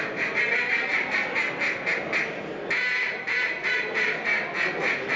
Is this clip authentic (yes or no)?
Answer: yes